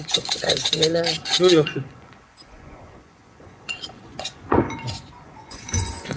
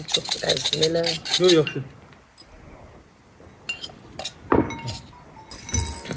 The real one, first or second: second